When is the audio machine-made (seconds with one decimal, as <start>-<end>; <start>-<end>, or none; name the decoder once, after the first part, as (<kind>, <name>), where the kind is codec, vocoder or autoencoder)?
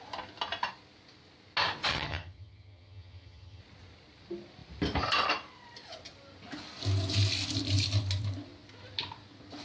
1.9-3.6 (vocoder, HiFi-GAN)